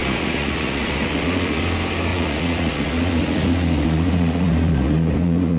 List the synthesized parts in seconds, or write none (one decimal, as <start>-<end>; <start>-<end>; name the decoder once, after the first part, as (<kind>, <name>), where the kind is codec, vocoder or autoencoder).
0.0-1.6 (vocoder, Vocos); 2.1-5.6